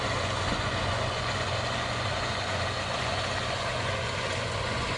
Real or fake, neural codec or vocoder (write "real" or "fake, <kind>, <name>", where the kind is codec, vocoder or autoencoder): fake, vocoder, Vocos